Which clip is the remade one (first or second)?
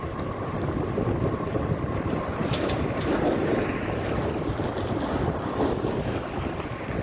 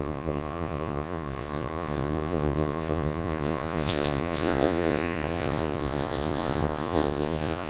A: second